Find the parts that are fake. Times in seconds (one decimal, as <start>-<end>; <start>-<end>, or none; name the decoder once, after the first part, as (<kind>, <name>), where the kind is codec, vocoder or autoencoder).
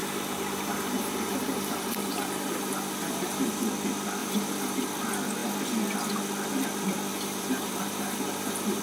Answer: 0.0-3.5 (vocoder, BigVGAN v2); 4.2-4.9; 7.1-8.8